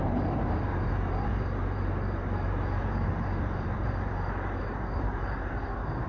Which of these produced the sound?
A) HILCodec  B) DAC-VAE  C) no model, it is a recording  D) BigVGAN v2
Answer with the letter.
D